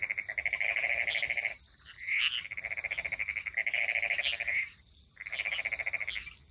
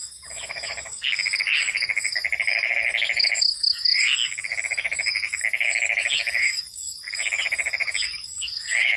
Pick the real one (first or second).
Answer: first